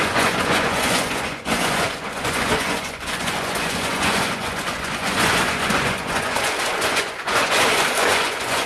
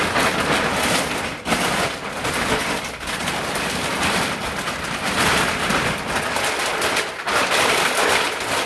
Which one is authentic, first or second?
second